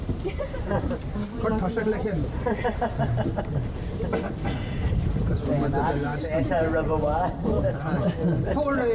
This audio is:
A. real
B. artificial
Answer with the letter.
B